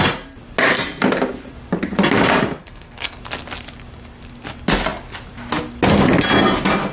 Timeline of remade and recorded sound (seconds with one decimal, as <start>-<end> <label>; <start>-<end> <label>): 0.0-2.6 recorded; 2.6-3.2 remade; 3.2-6.9 recorded